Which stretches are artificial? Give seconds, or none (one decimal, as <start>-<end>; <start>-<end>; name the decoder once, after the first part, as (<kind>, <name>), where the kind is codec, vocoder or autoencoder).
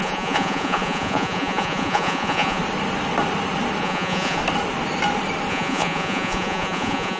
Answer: 0.0-2.6 (vocoder, Vocos); 3.8-4.4; 5.5-7.2